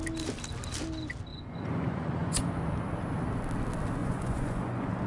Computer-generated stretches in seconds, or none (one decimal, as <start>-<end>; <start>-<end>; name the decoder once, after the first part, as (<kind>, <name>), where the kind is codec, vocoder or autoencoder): 1.3-2.5 (vocoder, Vocos); 4.0-5.1